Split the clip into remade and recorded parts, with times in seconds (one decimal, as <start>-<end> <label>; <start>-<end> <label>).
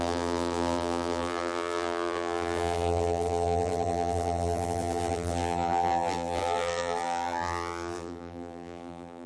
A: 0.0-9.3 remade